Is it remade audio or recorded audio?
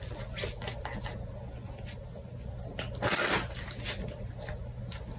recorded